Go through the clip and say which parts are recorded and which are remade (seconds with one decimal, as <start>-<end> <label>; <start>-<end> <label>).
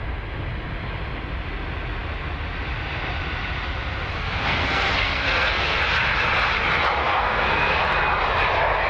0.0-4.1 recorded; 4.1-5.8 remade; 5.8-7.0 recorded; 7.0-7.8 remade; 7.8-8.9 recorded